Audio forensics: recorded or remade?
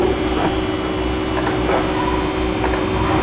recorded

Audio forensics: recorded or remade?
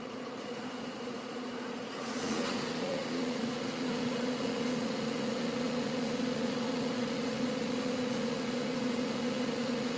remade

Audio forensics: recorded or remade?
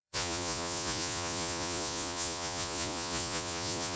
remade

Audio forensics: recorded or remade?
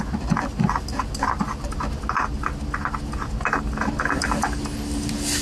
recorded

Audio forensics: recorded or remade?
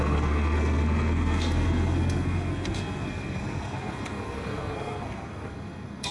remade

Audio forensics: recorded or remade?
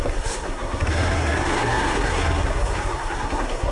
remade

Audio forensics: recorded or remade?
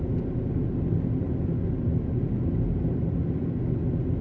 recorded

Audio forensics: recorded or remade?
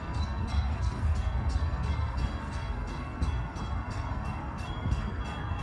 remade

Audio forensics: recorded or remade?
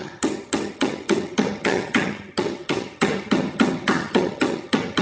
remade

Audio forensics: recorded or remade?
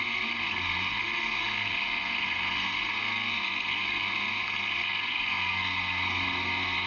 remade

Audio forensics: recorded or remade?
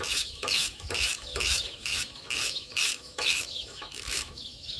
remade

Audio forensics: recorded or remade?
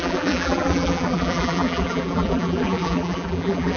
remade